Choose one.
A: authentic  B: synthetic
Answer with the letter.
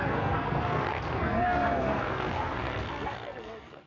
B